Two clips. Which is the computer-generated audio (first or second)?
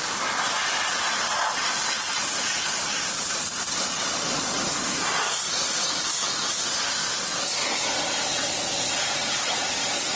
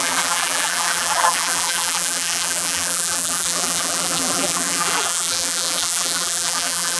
second